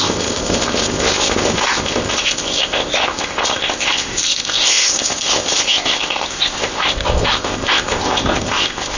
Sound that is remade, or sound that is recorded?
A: remade